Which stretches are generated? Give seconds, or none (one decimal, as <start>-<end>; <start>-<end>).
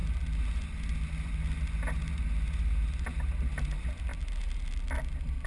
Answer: none